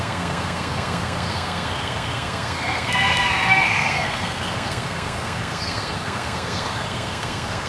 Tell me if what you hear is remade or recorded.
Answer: remade